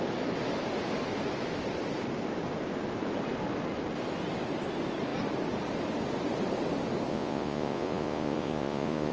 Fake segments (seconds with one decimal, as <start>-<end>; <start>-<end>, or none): 7.1-9.1